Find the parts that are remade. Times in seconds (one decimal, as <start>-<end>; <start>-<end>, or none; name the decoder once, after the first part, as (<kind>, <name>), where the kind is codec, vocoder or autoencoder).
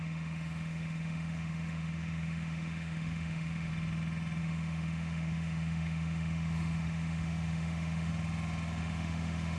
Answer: 0.0-3.7 (autoencoder, DAC-VAE); 4.4-8.1; 8.8-9.6